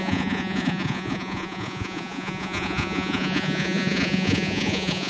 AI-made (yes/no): yes